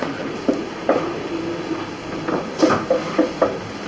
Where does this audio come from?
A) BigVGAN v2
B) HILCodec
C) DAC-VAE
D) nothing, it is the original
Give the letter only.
D